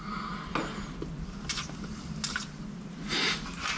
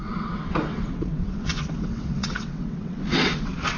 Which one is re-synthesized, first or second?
second